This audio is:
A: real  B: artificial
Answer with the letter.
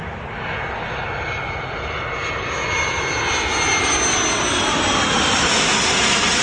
A